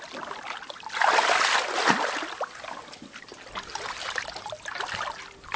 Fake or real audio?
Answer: real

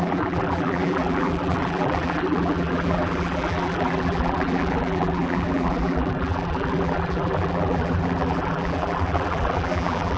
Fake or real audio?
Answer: fake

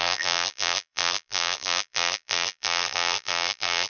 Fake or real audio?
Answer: fake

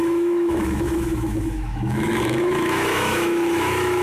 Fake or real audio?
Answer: fake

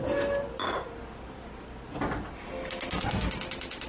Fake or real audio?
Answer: real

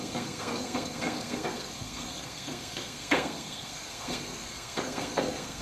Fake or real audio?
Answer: fake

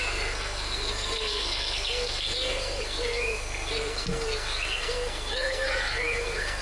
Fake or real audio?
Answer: fake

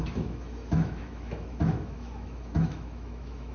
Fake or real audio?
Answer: fake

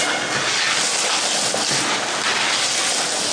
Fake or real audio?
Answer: real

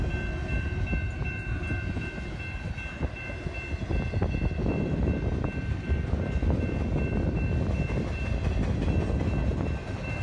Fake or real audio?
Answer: real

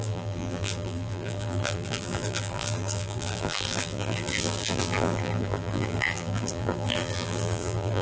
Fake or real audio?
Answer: fake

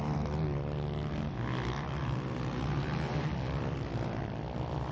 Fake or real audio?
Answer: real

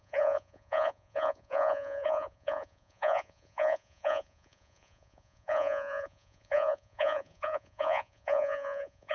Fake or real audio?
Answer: fake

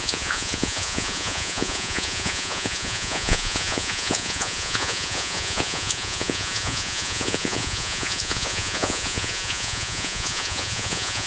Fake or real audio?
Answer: fake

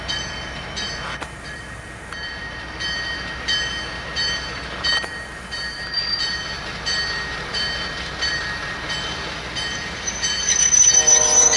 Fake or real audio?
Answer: fake